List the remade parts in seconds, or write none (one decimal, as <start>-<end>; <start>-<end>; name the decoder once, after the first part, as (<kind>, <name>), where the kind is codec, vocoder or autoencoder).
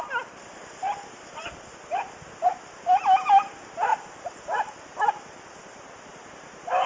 none